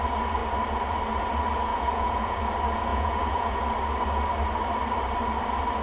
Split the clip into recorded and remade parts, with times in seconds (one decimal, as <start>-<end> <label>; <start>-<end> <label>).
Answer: 0.0-1.7 recorded; 1.7-2.4 remade; 2.4-2.9 recorded; 2.9-3.6 remade; 3.6-5.8 recorded